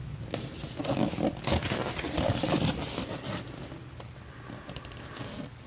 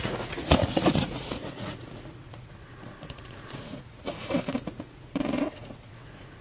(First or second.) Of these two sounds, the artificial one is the second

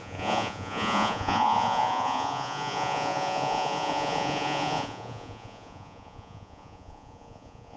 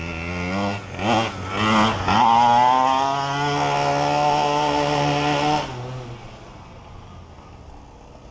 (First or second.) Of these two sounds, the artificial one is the first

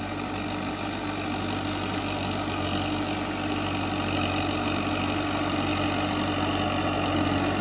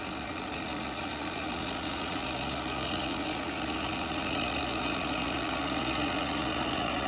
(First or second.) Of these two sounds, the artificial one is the second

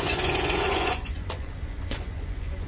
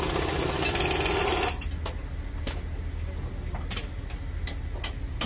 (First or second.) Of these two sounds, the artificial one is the first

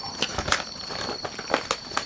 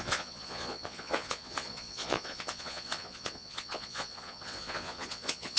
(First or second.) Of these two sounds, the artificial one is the second